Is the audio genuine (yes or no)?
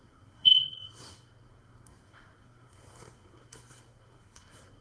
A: no